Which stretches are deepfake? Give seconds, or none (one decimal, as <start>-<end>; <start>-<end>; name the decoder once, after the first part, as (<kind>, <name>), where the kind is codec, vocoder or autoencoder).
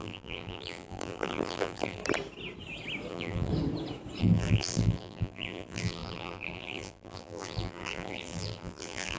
0.0-2.0 (vocoder, BigVGAN v2); 3.1-3.5; 4.2-9.2